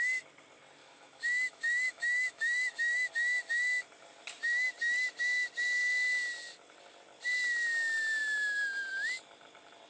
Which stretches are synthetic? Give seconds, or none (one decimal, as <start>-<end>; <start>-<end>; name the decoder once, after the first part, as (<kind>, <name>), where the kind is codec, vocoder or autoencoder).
0.8-3.1 (autoencoder, DAC-VAE)